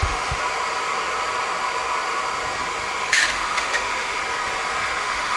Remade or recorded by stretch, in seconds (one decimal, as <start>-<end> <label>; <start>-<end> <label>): 0.0-0.4 remade; 0.4-3.0 recorded; 3.0-4.2 remade; 4.2-5.0 recorded; 5.0-5.4 remade